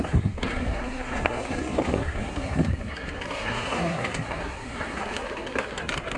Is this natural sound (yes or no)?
no